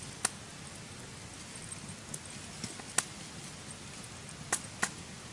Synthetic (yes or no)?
no